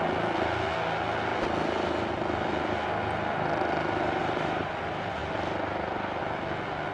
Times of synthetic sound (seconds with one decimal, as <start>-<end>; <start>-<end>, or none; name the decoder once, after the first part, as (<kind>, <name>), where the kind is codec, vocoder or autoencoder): 4.2-4.7 (vocoder, BigVGAN v2)